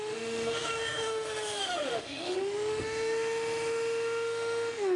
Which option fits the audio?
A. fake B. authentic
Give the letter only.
A